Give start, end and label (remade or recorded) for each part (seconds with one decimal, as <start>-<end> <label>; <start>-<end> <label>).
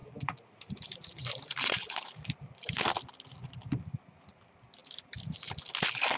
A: 0.0-2.8 remade; 2.8-4.8 recorded; 4.8-5.5 remade; 5.5-6.2 recorded